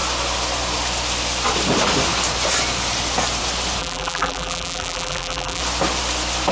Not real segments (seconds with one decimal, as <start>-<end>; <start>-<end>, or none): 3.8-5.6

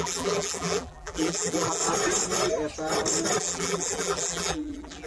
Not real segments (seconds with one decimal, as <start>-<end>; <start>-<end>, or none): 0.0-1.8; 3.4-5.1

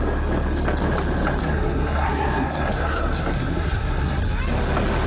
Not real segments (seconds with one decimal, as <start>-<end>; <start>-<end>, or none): 1.4-4.2